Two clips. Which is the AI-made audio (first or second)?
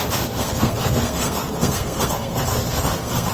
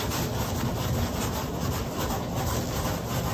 first